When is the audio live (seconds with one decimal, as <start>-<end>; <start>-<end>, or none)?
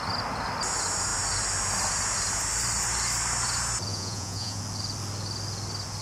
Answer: 0.0-3.9; 4.6-6.0